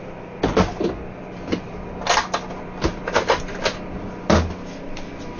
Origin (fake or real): real